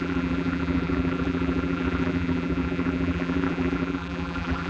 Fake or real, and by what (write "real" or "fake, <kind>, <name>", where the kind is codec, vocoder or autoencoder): fake, vocoder, BigVGAN v2